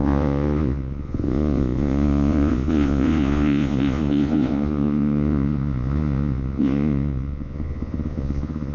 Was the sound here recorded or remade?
remade